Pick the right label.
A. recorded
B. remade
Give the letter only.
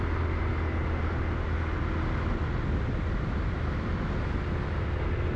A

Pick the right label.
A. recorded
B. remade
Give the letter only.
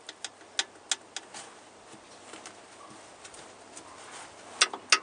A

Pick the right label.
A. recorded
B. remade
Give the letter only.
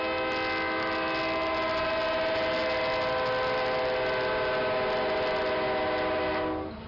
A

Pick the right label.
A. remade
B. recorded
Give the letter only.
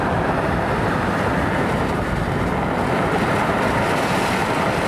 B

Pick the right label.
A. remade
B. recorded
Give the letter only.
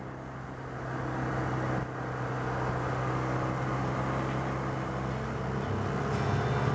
B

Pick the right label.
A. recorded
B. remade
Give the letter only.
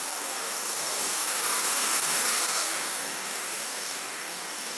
B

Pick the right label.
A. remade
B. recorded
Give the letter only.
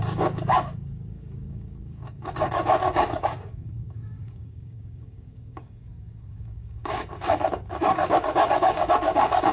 A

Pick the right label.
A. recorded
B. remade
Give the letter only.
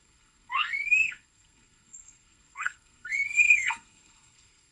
B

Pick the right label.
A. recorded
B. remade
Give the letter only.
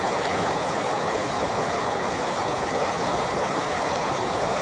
B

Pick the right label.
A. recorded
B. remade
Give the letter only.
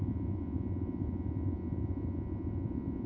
B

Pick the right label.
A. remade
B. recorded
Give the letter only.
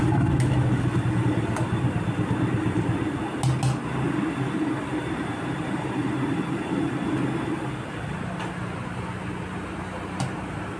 B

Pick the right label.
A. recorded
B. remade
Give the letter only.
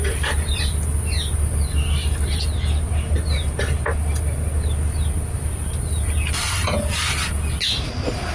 A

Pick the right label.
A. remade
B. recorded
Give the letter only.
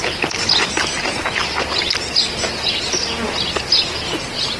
B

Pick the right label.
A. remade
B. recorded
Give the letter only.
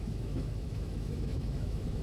A